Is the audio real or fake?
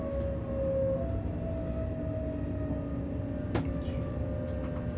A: real